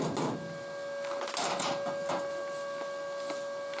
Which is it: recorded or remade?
recorded